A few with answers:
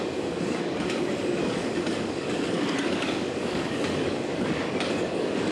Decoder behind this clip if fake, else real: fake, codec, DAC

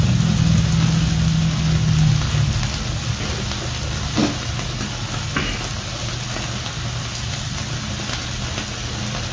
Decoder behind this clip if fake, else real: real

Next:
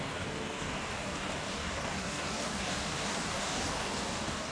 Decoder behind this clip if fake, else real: fake, codec, DAC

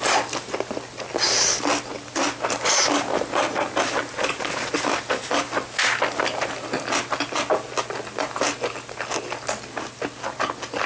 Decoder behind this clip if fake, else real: real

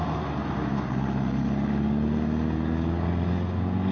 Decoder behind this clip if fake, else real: real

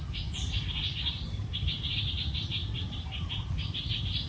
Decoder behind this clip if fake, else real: real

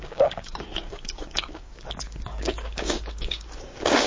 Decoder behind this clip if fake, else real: fake, codec, DAC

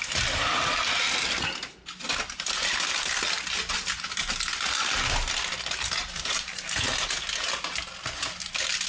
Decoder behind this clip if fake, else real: real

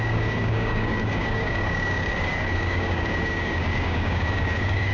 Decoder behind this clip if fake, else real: fake, codec, DAC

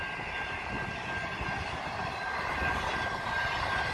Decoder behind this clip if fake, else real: real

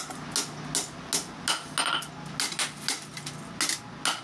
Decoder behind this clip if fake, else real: real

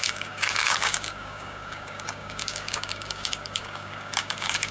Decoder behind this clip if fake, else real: fake, codec, DAC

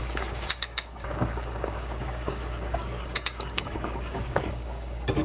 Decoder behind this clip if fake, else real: fake, codec, DAC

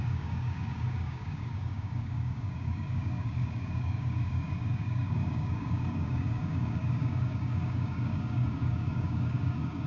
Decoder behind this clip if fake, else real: fake, codec, DAC